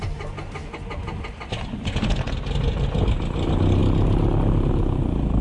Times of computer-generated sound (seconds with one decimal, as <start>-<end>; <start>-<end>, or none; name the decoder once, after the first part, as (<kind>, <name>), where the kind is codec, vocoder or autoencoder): none